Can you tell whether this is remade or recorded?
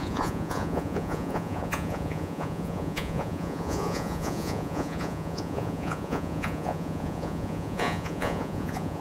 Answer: remade